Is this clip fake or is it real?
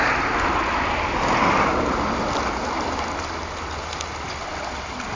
real